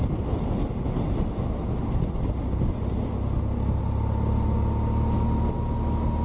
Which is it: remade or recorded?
recorded